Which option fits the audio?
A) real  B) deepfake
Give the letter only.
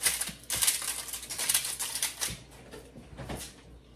A